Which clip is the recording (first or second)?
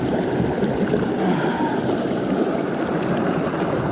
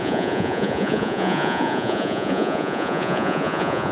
first